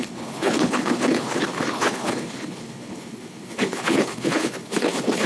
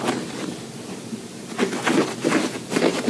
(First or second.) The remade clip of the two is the first